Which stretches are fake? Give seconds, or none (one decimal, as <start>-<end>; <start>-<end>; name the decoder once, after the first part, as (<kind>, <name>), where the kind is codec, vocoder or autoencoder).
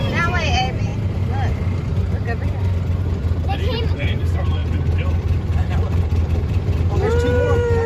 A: 0.0-0.9 (vocoder, BigVGAN v2); 3.4-4.6; 5.2-7.9